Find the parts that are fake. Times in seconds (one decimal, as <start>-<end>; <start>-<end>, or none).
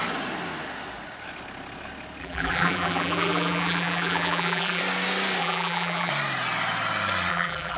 2.2-4.8; 5.4-6.1; 7.3-7.8